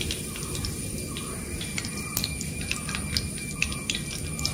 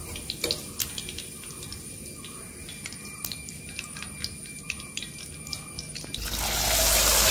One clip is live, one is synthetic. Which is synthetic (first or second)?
first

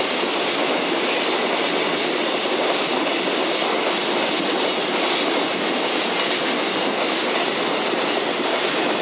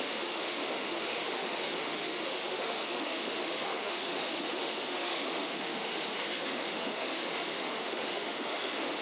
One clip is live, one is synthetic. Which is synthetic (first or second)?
second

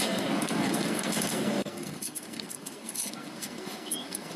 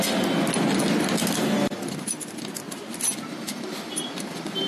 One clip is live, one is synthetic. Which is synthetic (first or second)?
first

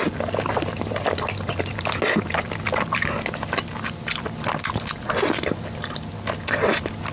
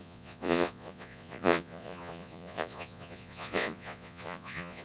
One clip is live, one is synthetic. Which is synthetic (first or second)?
second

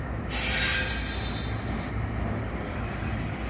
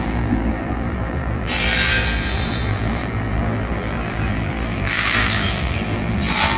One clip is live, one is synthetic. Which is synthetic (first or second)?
second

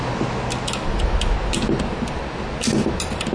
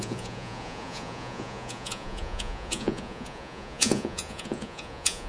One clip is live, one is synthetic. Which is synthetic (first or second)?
second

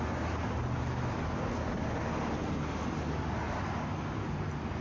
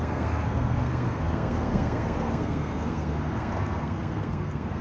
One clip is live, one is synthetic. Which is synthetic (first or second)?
second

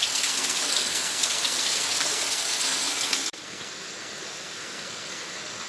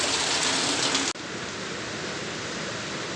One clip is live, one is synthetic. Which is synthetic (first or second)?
first